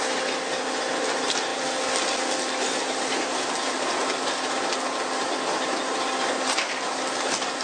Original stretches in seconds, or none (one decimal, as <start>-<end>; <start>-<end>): 0.0-7.6